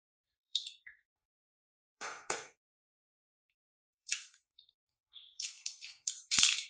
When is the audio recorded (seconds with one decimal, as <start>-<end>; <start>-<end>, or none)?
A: none